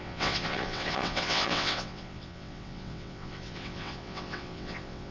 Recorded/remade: remade